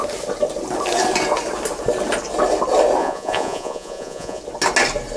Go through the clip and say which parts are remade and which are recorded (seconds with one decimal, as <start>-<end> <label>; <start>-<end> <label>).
0.0-3.0 recorded; 3.0-4.4 remade; 4.4-5.2 recorded